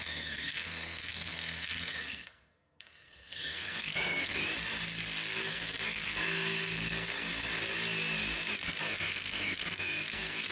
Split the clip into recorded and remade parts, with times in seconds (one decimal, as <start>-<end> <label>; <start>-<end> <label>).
0.0-4.4 remade; 4.4-5.5 recorded; 5.5-7.3 remade; 7.3-8.8 recorded; 8.8-10.5 remade

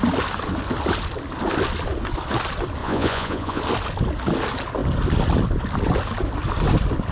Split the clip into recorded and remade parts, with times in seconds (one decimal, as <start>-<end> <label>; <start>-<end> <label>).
0.0-2.8 recorded; 2.8-3.6 remade; 3.6-7.1 recorded